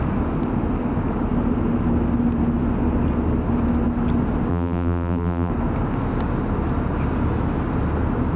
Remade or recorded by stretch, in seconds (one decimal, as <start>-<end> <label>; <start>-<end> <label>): 0.0-4.5 recorded; 4.5-5.5 remade; 5.5-8.4 recorded

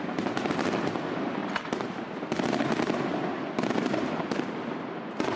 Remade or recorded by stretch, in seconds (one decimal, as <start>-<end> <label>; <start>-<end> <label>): 0.0-5.4 recorded

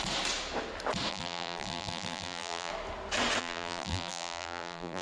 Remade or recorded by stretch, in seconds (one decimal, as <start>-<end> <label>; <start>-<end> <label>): 0.0-1.1 recorded; 1.1-2.7 remade; 2.7-3.4 recorded; 3.4-5.0 remade

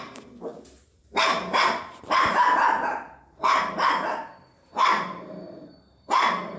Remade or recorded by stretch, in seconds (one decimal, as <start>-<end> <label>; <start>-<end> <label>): 0.0-6.6 remade

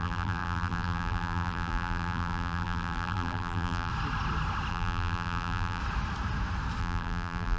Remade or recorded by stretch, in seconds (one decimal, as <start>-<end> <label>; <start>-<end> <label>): 0.0-3.9 remade; 3.9-4.7 recorded; 4.7-5.8 remade; 5.8-6.8 recorded; 6.8-7.6 remade

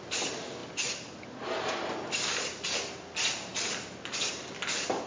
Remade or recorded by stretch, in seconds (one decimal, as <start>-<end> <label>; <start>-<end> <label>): 0.0-5.1 recorded